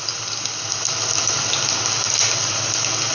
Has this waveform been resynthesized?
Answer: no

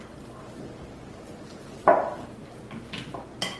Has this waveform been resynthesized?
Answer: no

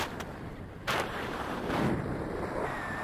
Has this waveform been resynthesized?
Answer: yes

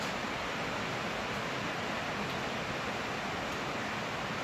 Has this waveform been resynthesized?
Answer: no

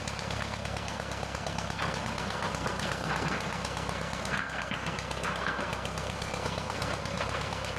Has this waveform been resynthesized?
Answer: yes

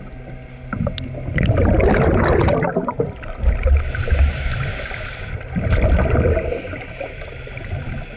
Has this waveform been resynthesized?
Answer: no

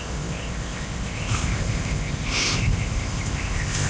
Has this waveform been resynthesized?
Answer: yes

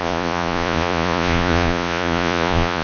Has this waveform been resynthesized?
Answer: yes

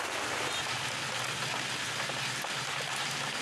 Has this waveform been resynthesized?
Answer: no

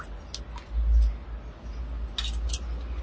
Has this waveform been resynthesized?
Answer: no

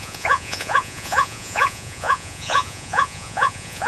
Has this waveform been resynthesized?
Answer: yes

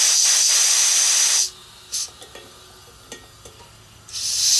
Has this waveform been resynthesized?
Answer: no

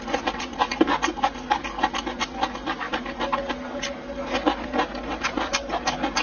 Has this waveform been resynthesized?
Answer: no